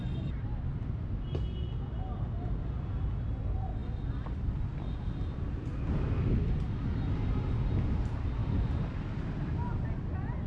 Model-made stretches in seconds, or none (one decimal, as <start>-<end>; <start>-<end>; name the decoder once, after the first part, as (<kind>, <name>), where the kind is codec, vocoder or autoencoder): none